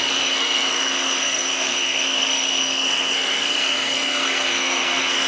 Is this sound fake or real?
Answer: fake